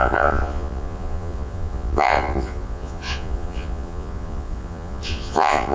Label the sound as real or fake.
fake